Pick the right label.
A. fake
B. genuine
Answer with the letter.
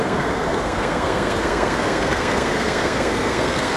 A